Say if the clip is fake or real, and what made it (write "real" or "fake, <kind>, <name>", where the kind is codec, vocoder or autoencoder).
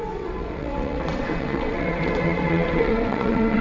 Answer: fake, vocoder, WaveNeXt